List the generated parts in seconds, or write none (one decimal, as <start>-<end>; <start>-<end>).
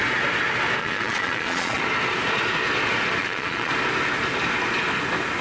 0.8-1.8; 3.2-3.7